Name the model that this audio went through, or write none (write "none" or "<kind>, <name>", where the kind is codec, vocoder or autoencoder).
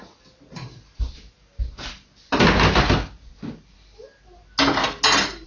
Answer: none